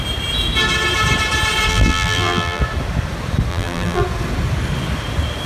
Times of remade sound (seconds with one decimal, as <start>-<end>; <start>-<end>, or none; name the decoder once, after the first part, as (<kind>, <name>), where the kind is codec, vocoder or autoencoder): 1.7-2.6 (vocoder, BigVGAN v2); 3.5-4.0